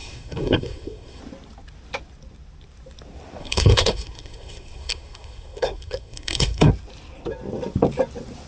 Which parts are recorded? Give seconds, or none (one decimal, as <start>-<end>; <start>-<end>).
1.2-3.4; 6.7-8.5